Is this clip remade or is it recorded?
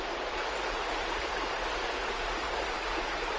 remade